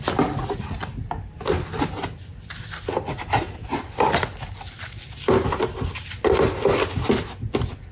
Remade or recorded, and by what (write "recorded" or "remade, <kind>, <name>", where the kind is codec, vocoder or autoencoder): recorded